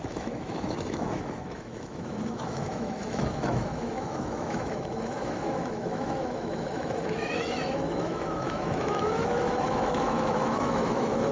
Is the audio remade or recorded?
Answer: remade